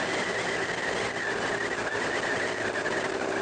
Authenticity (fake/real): real